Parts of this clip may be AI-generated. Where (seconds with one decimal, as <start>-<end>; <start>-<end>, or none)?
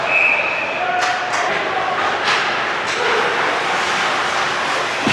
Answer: none